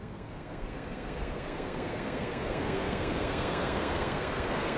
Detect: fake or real fake